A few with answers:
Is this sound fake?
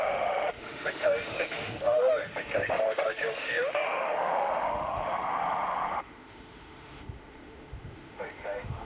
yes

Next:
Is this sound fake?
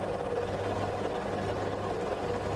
no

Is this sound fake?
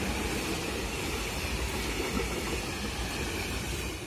no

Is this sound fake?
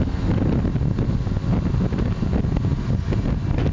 no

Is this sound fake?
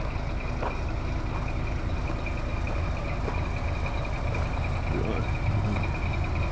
no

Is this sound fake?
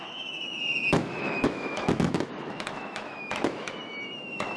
yes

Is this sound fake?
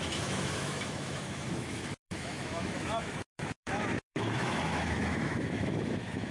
yes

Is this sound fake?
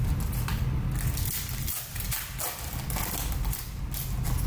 no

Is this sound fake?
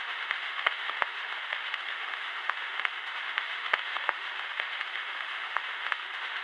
yes